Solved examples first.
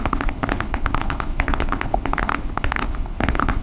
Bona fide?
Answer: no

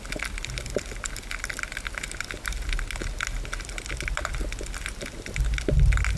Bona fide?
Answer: yes